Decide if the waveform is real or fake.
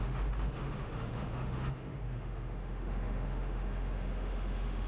fake